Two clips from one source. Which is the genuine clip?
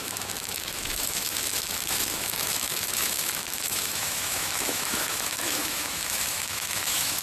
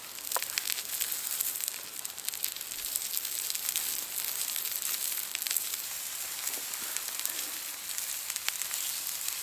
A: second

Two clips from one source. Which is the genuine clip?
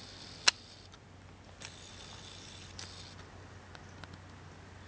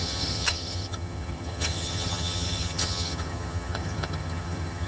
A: first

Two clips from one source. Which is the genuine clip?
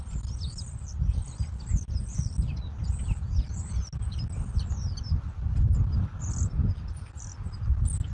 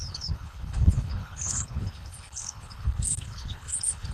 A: first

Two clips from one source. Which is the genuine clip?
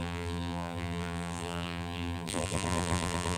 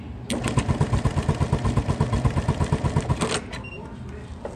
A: second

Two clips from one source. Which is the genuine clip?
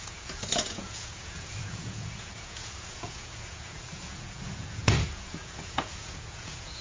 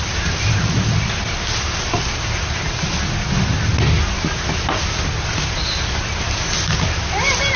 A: second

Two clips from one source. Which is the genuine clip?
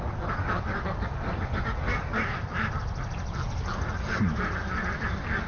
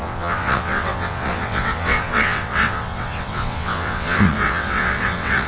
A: first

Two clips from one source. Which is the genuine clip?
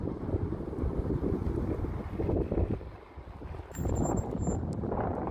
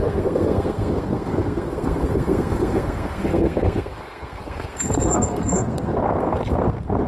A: first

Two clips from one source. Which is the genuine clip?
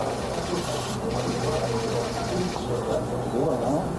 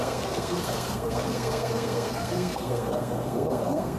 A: first